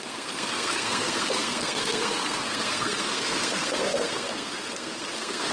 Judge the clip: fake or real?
fake